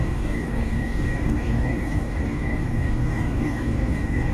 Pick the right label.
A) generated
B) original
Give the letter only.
A